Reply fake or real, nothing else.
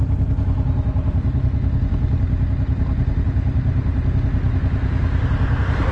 real